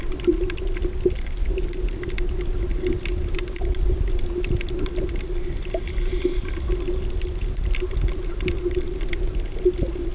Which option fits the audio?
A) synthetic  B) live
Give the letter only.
B